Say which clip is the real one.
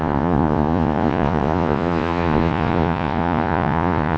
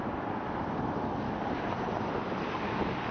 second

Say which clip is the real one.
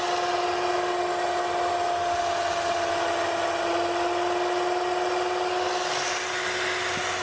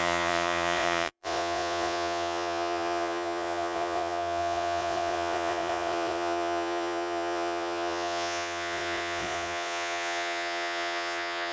first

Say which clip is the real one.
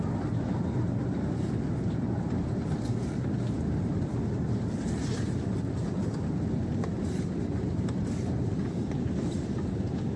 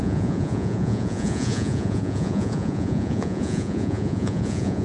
first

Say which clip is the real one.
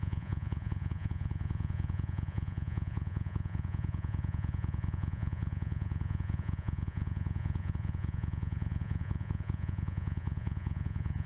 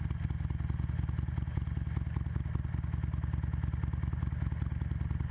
second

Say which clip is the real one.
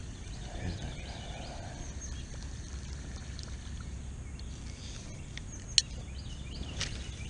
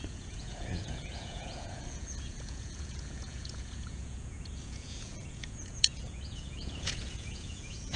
first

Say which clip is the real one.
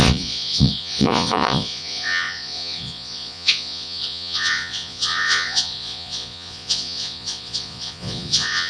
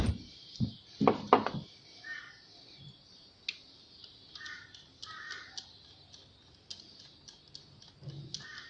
second